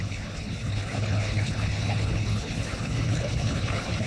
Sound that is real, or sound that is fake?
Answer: fake